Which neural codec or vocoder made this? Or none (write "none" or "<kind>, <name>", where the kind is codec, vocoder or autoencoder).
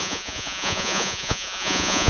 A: vocoder, Vocos